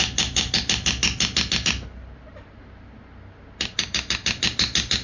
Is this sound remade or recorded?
recorded